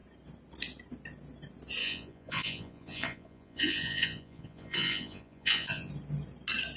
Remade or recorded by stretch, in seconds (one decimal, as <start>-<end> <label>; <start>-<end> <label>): 0.0-1.8 recorded; 1.8-5.9 remade; 5.9-6.8 recorded